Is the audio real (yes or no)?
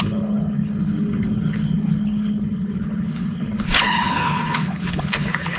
no